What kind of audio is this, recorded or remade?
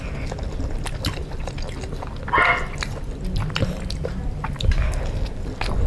recorded